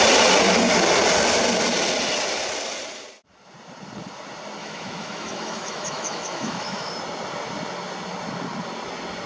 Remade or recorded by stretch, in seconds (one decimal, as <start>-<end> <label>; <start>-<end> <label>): 0.0-4.6 recorded; 4.6-6.9 remade; 6.9-9.3 recorded